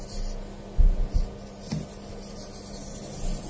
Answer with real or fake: real